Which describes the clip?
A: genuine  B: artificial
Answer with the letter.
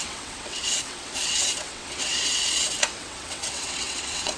B